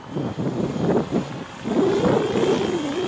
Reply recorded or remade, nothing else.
recorded